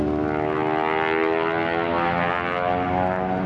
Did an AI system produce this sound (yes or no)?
no